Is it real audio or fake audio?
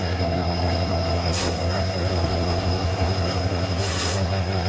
fake